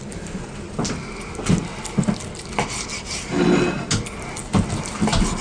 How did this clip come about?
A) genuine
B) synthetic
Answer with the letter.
A